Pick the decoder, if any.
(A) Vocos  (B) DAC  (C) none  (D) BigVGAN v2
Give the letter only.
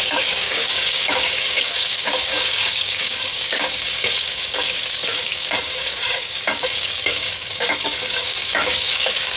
B